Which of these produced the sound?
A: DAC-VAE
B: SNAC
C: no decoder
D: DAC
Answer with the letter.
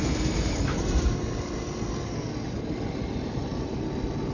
C